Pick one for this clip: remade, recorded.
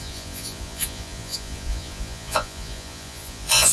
remade